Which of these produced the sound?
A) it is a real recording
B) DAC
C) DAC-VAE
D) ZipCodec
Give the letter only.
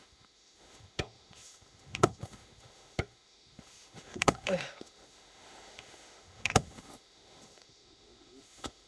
C